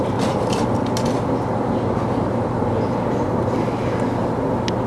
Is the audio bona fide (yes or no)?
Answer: yes